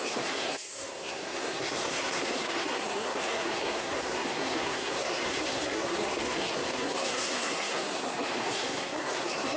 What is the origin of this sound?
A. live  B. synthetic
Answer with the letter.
B